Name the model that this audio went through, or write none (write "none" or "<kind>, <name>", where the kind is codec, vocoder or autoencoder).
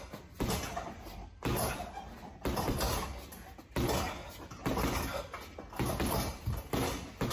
none